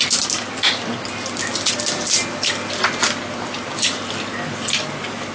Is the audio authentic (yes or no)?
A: yes